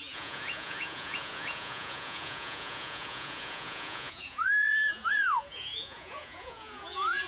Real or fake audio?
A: fake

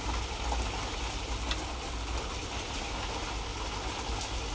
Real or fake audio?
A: real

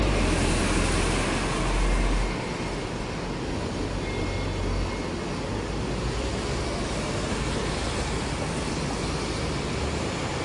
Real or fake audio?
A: real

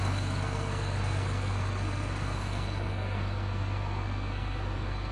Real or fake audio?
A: fake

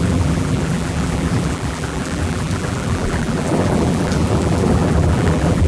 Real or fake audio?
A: fake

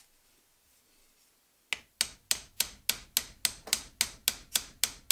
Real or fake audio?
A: real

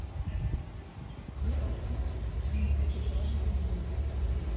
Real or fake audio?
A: real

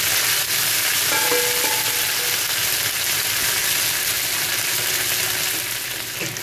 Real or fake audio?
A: real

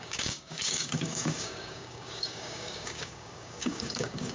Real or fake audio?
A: fake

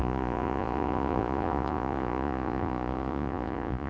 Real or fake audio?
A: fake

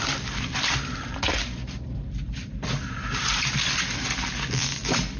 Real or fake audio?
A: fake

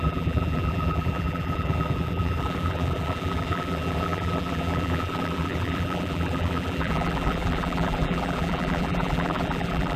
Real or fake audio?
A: fake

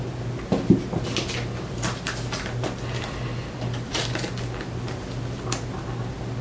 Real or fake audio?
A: real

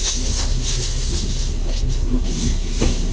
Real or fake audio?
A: fake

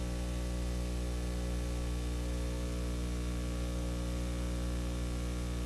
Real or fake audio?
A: real